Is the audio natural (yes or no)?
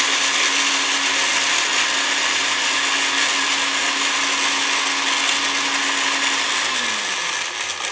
yes